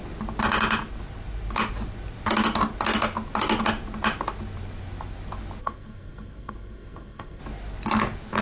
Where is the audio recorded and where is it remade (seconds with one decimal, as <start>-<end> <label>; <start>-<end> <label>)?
0.0-5.6 recorded; 5.6-7.4 remade; 7.4-8.4 recorded